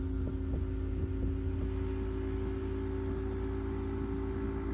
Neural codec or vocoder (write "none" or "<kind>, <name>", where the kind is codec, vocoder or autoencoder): none